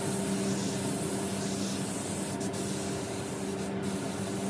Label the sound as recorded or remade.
recorded